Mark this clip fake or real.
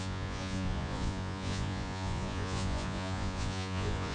fake